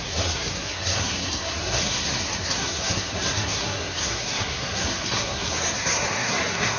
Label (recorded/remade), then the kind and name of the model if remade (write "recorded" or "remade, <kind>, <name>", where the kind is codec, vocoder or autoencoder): remade, codec, SNAC